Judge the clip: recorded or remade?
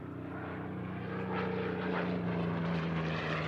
remade